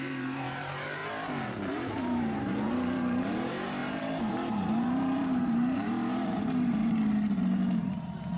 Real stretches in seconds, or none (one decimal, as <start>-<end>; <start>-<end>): 1.0-1.9; 6.8-7.4